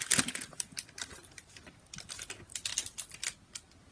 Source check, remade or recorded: recorded